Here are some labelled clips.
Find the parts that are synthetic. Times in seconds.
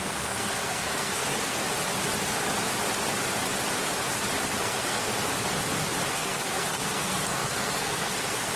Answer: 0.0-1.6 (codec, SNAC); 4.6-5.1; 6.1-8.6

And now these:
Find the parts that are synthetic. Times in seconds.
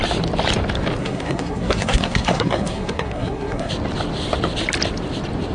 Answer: 1.0-3.7 (codec, SNAC)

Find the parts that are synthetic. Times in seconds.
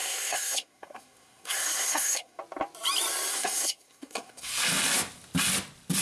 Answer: 0.0-2.4 (codec, SNAC); 3.3-4.5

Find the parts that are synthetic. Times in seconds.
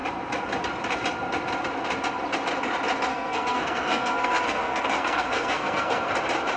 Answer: 3.1-6.1 (codec, SNAC)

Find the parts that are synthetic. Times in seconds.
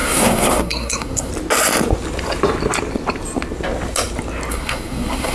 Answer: 0.0-1.3 (codec, SNAC); 4.5-5.3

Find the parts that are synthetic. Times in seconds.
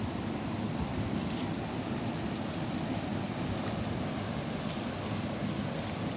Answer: none